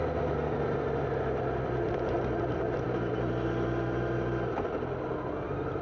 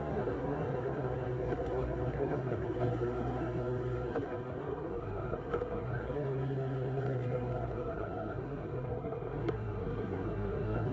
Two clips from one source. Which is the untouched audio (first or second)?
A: first